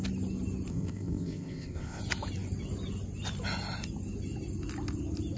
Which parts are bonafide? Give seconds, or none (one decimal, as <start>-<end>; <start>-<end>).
0.0-0.7; 2.0-5.4